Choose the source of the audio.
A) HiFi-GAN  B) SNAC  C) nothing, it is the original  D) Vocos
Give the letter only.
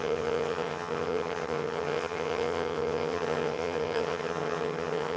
A